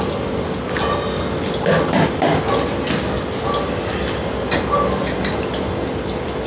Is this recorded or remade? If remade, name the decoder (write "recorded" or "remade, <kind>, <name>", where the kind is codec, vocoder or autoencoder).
recorded